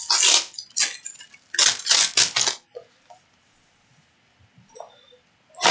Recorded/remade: recorded